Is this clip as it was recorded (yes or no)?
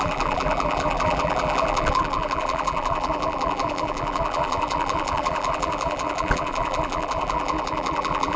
no